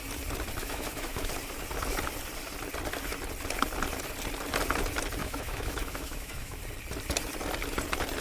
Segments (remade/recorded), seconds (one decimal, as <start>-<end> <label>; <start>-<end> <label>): 0.0-0.6 recorded; 0.6-1.3 remade; 1.3-5.2 recorded; 5.2-6.6 remade; 6.6-8.2 recorded